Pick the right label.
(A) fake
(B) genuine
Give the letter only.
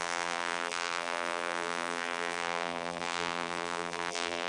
A